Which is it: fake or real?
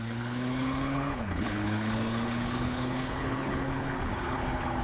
fake